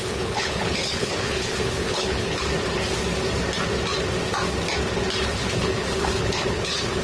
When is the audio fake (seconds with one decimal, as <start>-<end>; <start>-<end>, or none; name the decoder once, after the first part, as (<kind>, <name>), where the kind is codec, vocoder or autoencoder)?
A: 0.0-2.5 (codec, HILCodec); 5.2-7.0